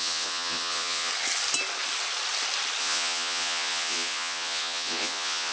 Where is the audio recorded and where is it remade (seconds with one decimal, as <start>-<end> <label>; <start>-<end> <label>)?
0.0-1.1 remade; 1.1-2.8 recorded; 2.8-5.5 remade